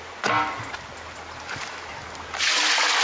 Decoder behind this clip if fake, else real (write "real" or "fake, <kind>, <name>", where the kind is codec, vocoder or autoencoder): real